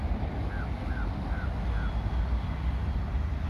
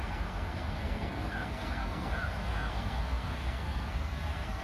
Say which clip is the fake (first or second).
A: second